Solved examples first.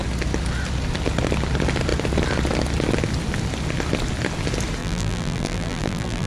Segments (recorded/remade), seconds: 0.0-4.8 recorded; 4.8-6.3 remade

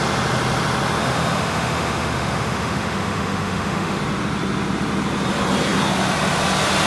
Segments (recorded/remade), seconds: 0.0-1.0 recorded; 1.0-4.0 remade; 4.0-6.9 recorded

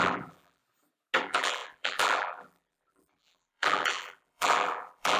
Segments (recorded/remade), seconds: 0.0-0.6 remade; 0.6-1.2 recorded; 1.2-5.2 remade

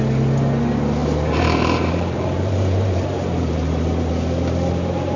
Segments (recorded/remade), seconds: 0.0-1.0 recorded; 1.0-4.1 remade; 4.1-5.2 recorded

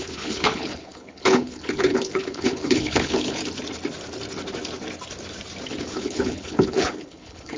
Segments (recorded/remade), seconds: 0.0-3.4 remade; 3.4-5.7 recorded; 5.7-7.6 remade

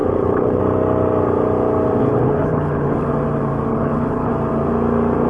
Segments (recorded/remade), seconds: 0.0-0.6 remade; 0.6-2.0 recorded; 2.0-3.1 remade; 3.1-3.7 recorded; 3.7-4.3 remade; 4.3-5.3 recorded

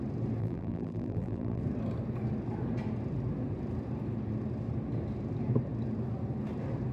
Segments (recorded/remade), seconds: 0.0-0.4 recorded; 0.4-1.6 remade; 1.6-6.9 recorded

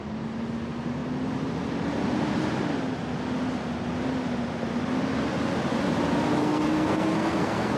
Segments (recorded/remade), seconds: 0.0-6.4 recorded; 6.4-7.8 remade